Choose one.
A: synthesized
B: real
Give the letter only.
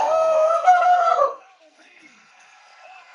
A